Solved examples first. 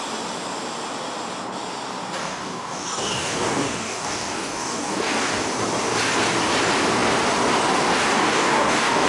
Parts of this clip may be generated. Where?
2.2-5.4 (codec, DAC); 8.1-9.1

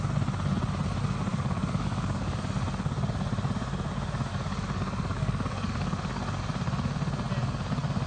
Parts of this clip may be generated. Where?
1.3-2.4 (codec, DAC); 4.3-6.4

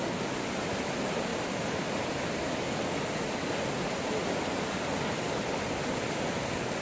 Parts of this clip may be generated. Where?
none

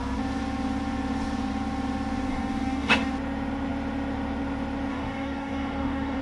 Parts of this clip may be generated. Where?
2.3-3.1 (codec, DAC); 4.9-6.2

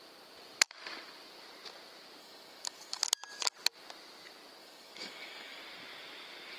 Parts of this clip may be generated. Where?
2.2-3.0 (codec, DAC); 4.6-5.6

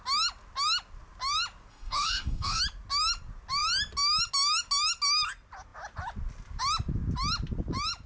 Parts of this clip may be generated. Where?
1.7-2.6 (codec, DAC)

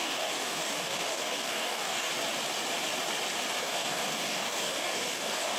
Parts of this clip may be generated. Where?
0.0-2.1 (codec, DAC); 3.6-5.6

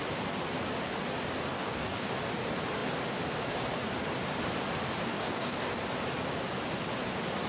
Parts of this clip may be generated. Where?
1.5-2.1 (codec, DAC); 5.1-5.7